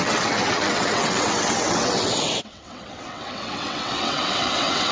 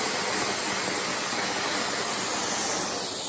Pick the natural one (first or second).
second